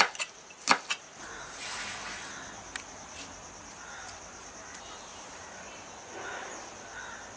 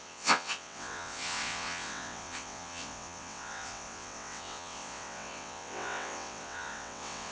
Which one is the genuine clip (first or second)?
first